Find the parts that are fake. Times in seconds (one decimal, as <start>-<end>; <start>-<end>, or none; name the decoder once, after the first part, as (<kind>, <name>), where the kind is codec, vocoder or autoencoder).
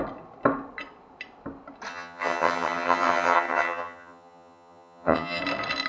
1.9-5.4 (vocoder, HiFi-GAN)